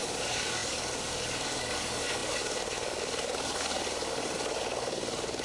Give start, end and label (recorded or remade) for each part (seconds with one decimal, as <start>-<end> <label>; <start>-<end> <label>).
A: 0.0-5.4 remade